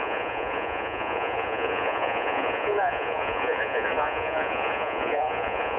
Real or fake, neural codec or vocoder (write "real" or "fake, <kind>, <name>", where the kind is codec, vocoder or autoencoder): fake, vocoder, Vocos